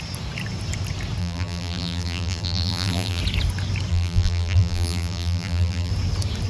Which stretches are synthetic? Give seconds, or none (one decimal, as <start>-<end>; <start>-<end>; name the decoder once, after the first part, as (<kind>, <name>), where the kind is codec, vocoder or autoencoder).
1.2-3.2 (vocoder, BigVGAN v2); 3.9-5.9